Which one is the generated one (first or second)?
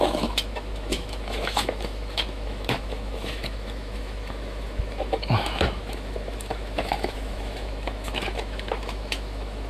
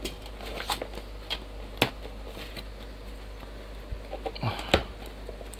first